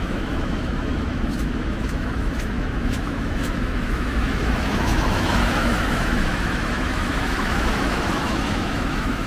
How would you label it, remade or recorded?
remade